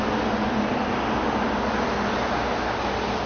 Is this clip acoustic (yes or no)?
yes